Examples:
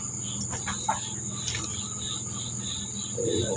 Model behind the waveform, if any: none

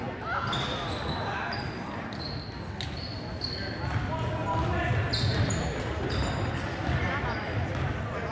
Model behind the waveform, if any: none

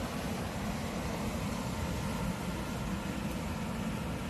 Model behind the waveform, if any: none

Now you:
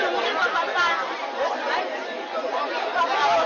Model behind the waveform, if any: none